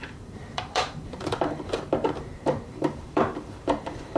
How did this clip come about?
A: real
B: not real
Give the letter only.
B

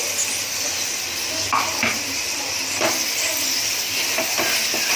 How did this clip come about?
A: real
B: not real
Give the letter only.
A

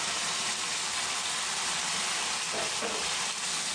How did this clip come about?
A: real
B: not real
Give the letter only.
B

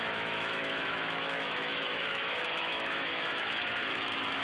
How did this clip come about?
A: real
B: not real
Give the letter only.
B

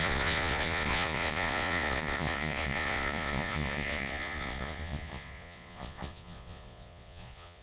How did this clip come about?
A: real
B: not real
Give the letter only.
B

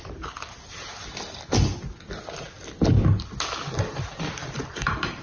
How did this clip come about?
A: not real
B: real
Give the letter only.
B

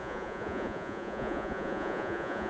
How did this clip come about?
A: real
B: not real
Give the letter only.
B